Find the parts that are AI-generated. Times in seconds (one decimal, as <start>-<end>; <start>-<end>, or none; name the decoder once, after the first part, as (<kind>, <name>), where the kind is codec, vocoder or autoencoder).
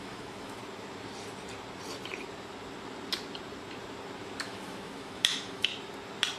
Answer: 0.0-0.6 (autoencoder, DAC-VAE); 4.4-5.7